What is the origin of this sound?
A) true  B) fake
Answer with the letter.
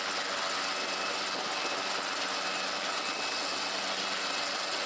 A